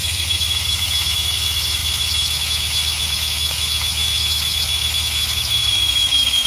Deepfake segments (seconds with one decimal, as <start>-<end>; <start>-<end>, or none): 0.0-6.5